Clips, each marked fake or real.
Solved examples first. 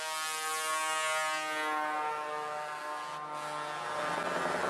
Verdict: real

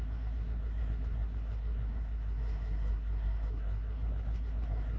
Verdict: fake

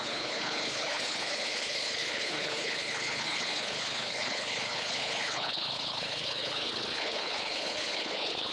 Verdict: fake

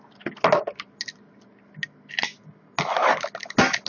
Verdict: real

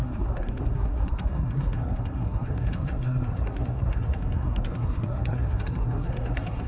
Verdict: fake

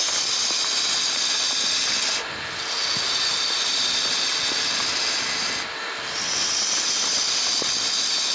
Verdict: real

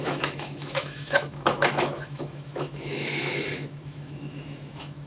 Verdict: fake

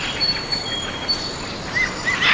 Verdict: real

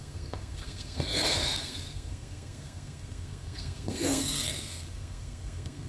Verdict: fake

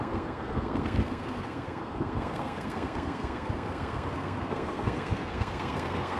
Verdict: fake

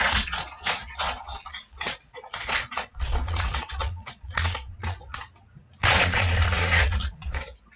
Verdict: fake